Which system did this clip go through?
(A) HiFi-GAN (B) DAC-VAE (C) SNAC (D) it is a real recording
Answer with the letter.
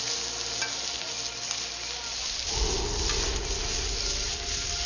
D